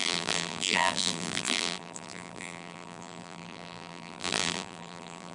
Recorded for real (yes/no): no